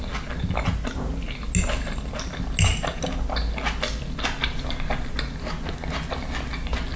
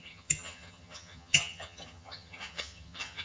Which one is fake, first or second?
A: second